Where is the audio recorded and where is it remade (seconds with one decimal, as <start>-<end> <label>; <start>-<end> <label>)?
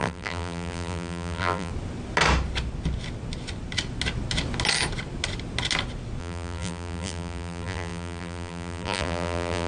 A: 0.0-1.7 remade; 1.7-6.2 recorded; 6.2-9.7 remade